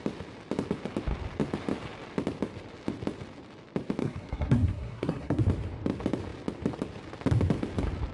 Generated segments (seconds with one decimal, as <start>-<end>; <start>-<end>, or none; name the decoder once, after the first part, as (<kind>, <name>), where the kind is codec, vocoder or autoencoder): 4.0-5.4 (codec, SNAC)